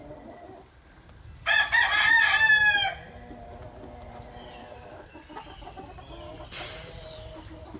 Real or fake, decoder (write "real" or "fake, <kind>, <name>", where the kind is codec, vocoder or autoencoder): real